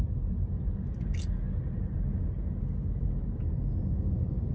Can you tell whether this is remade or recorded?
recorded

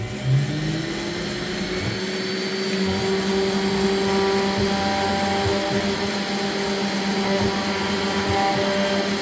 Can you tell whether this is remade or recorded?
recorded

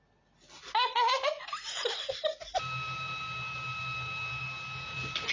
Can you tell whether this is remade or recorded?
recorded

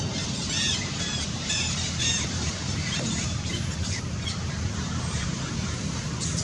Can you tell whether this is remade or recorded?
remade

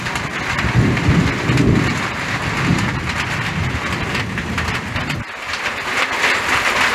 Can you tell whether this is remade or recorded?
recorded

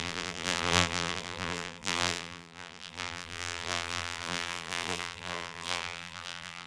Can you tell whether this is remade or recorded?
remade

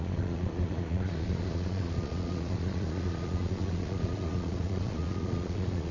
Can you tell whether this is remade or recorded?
remade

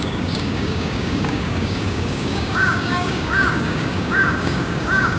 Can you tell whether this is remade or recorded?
remade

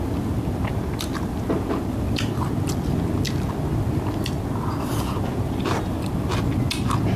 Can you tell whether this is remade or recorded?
recorded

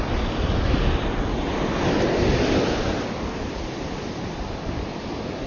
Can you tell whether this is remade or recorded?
recorded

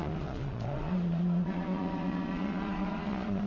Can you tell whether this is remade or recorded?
remade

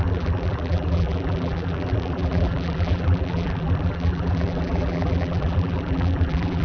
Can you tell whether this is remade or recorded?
remade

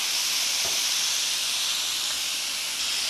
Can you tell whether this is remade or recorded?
recorded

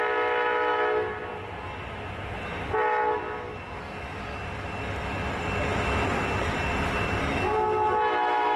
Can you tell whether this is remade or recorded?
recorded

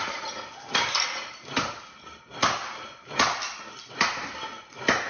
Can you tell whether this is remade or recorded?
recorded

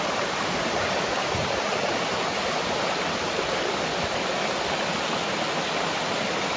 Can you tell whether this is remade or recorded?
recorded